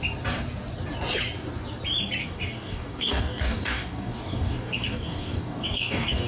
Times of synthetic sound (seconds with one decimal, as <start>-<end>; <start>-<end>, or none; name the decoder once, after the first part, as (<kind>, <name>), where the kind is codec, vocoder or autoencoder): 2.2-6.3 (codec, DAC)